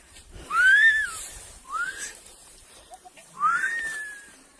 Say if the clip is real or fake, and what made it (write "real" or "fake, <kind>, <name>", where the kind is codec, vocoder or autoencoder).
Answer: fake, vocoder, BigVGAN v2